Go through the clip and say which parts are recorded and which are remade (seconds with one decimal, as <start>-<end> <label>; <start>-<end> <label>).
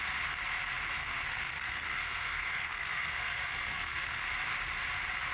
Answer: 0.0-1.0 recorded; 1.0-4.2 remade; 4.2-5.3 recorded